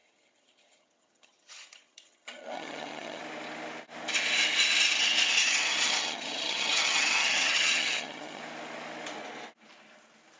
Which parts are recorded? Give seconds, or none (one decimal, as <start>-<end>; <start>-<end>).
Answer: 3.2-5.4; 8.4-10.4